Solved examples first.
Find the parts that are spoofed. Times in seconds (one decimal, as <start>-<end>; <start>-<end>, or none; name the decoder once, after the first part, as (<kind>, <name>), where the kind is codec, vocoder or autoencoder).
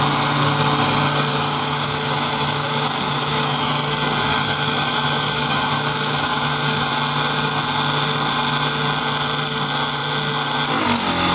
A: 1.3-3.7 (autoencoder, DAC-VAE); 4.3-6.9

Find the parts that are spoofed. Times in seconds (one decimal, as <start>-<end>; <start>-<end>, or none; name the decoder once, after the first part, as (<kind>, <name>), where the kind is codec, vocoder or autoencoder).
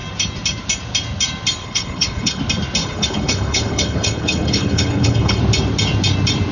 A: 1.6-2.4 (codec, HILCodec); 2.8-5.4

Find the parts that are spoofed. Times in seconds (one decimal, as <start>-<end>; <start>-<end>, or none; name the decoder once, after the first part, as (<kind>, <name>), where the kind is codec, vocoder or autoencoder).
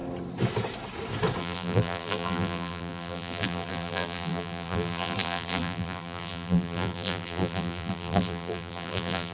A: 1.4-9.3 (vocoder, BigVGAN v2)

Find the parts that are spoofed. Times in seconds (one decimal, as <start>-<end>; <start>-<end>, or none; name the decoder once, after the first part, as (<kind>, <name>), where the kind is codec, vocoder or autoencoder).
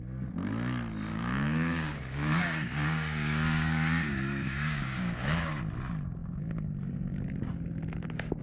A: 1.1-5.5 (codec, DAC)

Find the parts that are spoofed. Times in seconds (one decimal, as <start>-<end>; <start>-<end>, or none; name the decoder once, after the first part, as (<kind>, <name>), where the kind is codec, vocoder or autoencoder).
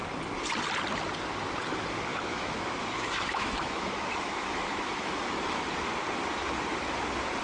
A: 2.1-5.7 (autoencoder, DAC-VAE)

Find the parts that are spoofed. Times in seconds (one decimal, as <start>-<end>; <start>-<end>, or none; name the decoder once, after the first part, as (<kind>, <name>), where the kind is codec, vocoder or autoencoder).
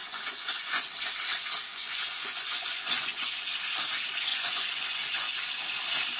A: 0.0-0.9 (vocoder, Vocos); 1.7-3.3; 4.3-5.3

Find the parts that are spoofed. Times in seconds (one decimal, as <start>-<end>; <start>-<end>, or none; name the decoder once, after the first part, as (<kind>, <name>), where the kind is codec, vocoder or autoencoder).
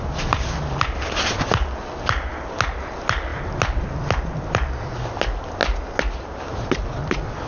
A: none